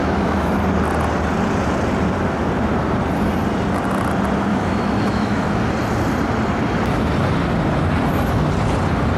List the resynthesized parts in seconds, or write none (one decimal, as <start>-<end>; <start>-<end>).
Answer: 0.0-0.5; 4.5-5.7